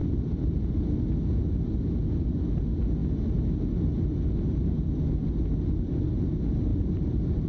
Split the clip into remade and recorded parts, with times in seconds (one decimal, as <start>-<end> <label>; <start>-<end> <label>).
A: 0.0-0.6 remade; 0.6-6.7 recorded; 6.7-7.5 remade